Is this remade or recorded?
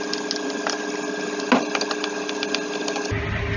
recorded